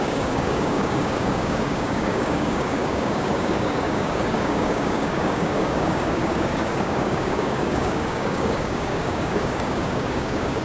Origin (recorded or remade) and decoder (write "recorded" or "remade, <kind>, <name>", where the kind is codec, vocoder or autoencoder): remade, codec, DAC